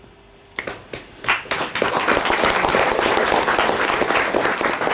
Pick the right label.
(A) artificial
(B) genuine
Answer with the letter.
B